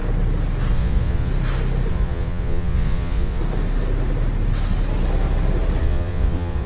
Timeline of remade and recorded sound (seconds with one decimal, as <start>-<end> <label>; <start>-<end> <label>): 0.0-0.7 recorded; 0.7-1.3 remade; 1.3-1.9 recorded; 1.9-3.4 remade; 3.4-5.8 recorded; 5.8-6.7 remade